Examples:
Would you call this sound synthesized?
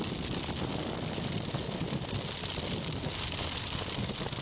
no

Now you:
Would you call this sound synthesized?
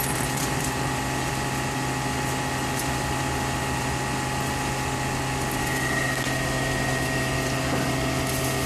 no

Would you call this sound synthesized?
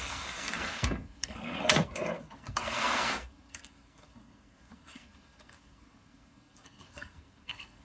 yes